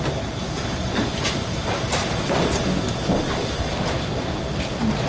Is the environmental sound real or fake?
real